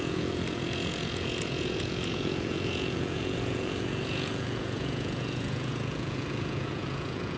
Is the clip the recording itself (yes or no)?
no